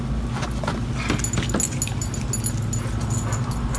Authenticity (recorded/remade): recorded